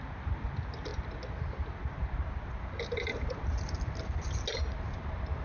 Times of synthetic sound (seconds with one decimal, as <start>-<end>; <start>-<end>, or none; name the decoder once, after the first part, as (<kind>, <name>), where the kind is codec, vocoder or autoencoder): none